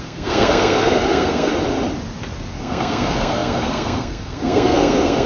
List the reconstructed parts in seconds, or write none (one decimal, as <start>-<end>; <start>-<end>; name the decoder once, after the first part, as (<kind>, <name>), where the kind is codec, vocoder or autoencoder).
0.0-1.5 (codec, SNAC); 2.5-5.3